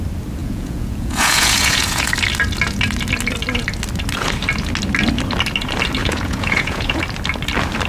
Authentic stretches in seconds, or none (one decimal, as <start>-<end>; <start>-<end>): 0.0-0.4; 2.1-6.0; 7.0-7.9